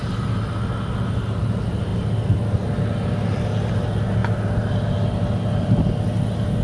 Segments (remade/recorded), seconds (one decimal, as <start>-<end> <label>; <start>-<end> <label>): 0.0-6.6 recorded